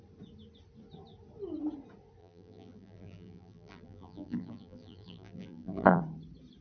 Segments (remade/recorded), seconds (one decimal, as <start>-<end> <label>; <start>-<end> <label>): 0.0-2.2 recorded; 2.2-6.0 remade; 6.0-6.6 recorded